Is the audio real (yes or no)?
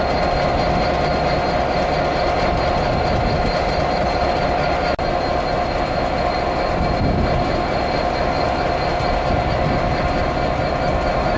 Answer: yes